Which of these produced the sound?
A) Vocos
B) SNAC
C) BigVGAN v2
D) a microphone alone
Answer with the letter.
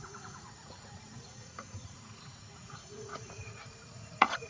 A